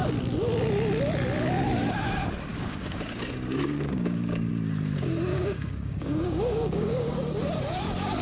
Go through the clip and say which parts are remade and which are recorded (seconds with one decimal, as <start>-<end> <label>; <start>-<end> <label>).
0.0-2.5 recorded; 2.5-4.5 remade; 4.5-5.3 recorded; 5.3-7.1 remade; 7.1-8.2 recorded